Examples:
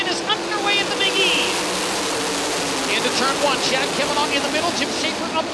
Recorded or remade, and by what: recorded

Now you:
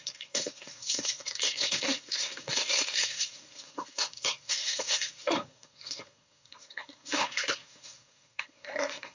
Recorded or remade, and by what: remade, codec, SNAC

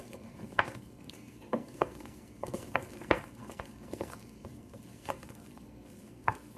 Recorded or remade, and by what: remade, codec, SNAC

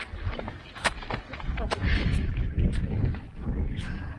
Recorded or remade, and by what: recorded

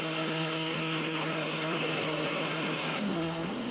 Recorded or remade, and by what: remade, codec, SNAC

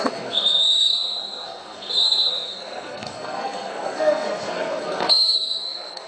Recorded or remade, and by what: remade, codec, SNAC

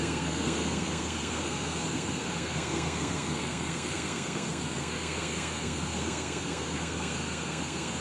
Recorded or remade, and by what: remade, codec, SNAC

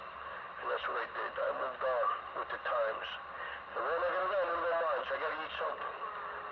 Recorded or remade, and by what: recorded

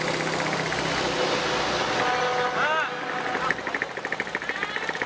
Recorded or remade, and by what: recorded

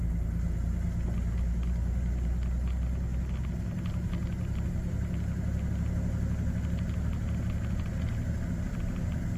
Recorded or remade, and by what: recorded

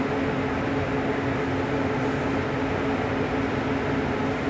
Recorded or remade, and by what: recorded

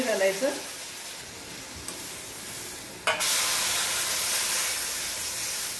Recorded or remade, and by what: recorded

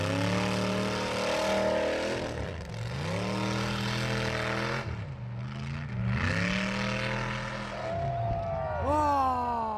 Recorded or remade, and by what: recorded